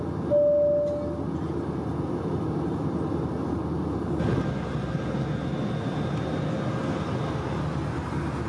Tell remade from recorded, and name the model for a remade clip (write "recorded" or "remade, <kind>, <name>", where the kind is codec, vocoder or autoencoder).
recorded